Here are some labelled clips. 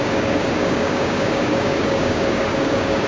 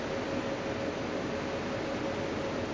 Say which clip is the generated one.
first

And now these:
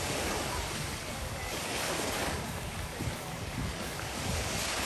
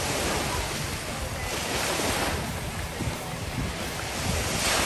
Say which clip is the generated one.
first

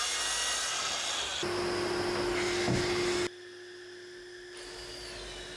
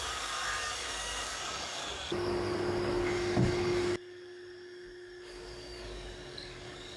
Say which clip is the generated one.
second